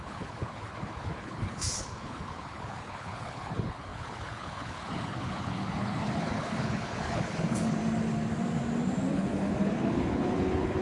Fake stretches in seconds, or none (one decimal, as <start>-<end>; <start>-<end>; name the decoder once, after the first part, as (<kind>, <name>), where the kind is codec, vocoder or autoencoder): 0.0-7.8 (codec, HILCodec); 9.1-10.8